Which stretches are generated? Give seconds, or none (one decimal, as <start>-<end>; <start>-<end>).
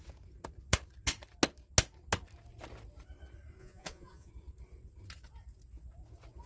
3.6-4.3